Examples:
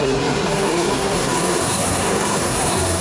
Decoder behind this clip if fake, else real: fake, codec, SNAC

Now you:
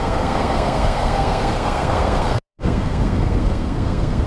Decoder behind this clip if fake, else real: fake, codec, SNAC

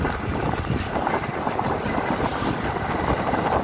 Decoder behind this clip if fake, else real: real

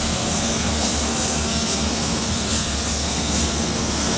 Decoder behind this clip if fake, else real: fake, codec, SNAC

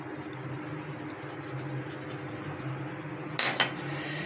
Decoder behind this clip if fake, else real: real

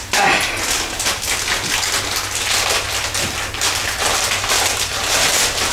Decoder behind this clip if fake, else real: real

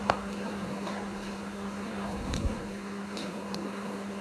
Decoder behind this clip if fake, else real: fake, codec, SNAC